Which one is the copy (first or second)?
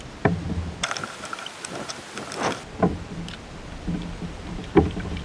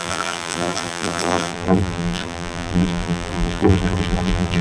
second